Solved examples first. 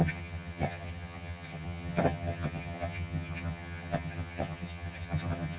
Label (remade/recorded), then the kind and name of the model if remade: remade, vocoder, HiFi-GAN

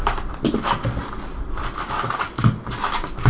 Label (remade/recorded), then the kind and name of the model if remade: recorded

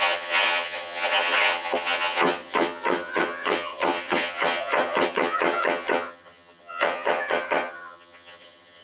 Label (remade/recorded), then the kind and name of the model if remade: remade, vocoder, HiFi-GAN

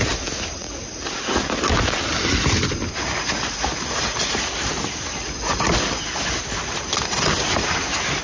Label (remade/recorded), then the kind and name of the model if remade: recorded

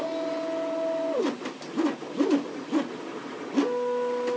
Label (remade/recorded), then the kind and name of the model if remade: recorded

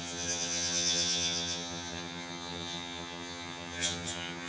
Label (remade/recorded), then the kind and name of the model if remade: remade, vocoder, HiFi-GAN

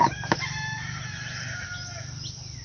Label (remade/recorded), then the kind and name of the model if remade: recorded